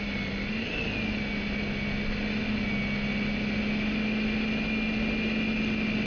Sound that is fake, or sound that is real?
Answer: real